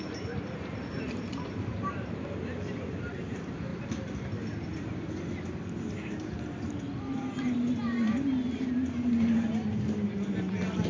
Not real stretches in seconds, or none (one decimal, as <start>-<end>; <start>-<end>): 0.0-3.7; 5.9-10.9